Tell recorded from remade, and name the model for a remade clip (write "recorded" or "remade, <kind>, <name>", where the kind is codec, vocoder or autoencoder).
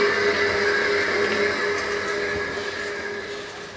recorded